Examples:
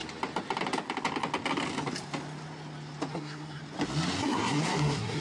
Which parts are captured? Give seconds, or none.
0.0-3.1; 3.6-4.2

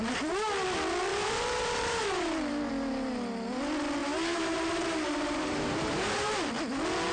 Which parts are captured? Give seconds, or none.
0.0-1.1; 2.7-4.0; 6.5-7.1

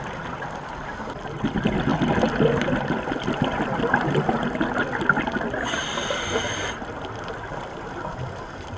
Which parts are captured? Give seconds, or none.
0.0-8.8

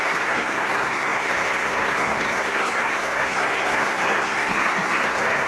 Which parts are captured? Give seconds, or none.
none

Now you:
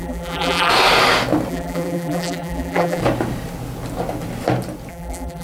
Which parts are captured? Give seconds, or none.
0.7-1.5; 3.0-4.9